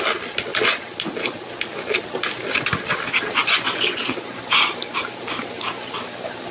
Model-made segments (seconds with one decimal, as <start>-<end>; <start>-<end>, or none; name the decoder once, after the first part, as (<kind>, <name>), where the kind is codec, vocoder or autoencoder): 3.4-4.0 (vocoder, Vocos)